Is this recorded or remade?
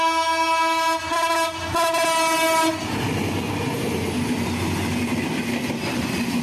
recorded